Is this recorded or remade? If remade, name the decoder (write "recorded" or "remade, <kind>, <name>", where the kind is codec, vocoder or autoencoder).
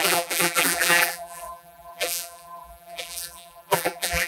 remade, vocoder, BigVGAN v2